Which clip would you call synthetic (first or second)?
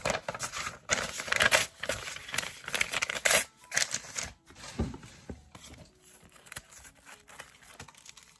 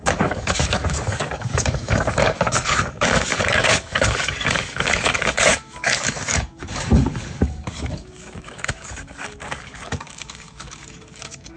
second